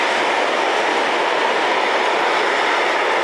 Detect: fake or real real